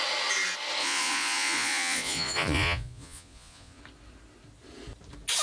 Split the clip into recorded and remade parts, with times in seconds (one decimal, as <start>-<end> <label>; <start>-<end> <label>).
0.0-0.8 recorded; 0.8-3.8 remade; 3.8-5.4 recorded